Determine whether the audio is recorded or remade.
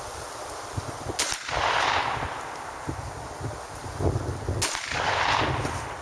recorded